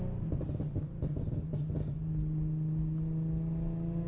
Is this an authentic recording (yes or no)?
yes